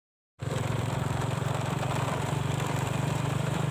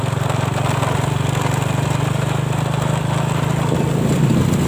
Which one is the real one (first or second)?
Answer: second